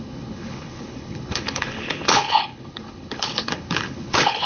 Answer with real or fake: fake